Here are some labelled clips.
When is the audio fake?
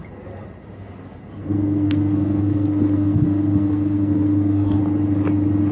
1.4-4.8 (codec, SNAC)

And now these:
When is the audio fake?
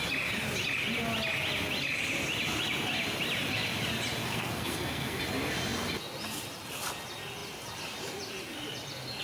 4.2-5.2 (codec, SNAC)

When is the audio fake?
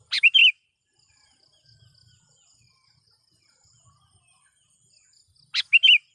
none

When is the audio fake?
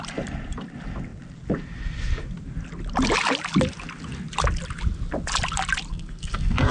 5.9-6.7 (codec, SNAC)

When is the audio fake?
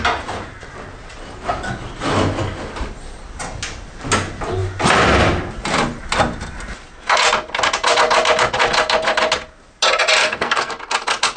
10.2-10.7 (codec, SNAC)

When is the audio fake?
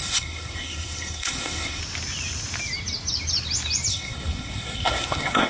0.0-1.8 (codec, SNAC); 3.9-5.5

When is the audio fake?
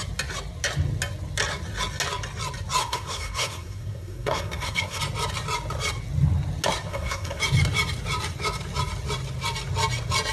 2.8-5.0 (codec, SNAC); 6.9-7.4